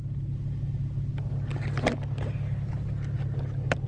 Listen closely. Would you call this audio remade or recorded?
recorded